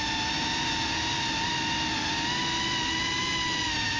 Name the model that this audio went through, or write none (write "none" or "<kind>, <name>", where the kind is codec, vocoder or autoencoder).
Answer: none